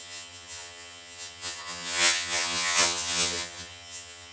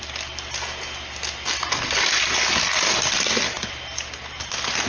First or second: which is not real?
first